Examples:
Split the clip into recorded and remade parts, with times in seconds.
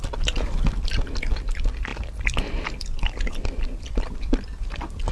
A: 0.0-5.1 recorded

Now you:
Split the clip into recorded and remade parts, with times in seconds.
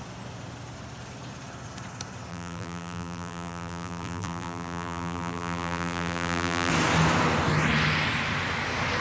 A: 0.0-2.3 recorded; 2.3-6.7 remade; 6.7-9.0 recorded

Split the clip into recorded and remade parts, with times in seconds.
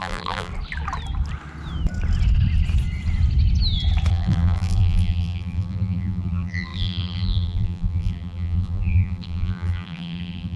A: 0.0-0.5 remade; 0.5-4.1 recorded; 4.1-10.6 remade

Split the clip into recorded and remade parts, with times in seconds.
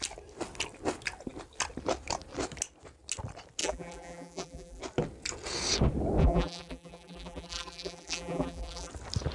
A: 0.0-3.6 recorded; 3.6-4.8 remade; 4.8-6.2 recorded; 6.2-8.9 remade; 8.9-9.3 recorded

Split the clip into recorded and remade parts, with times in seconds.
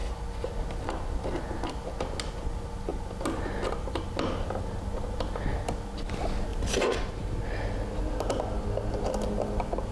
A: 0.0-6.5 recorded; 6.5-7.0 remade; 7.0-9.9 recorded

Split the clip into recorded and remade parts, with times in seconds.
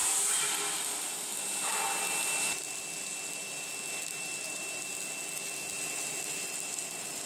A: 0.0-0.6 remade; 0.6-7.3 recorded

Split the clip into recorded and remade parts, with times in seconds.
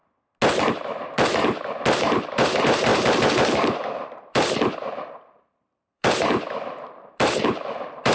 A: 0.0-0.7 recorded; 0.7-8.1 remade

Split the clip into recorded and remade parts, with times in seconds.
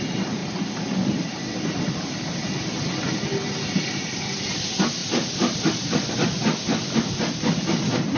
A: 0.0-5.0 recorded; 5.0-5.6 remade; 5.6-8.2 recorded